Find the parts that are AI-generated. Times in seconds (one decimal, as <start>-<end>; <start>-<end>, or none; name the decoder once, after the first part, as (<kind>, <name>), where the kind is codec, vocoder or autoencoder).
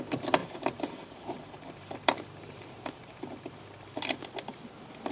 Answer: 0.4-3.5 (vocoder, BigVGAN v2)